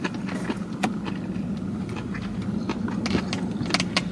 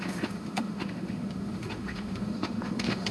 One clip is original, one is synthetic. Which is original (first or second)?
first